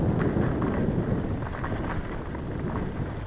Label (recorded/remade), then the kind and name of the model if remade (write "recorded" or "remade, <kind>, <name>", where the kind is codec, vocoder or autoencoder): recorded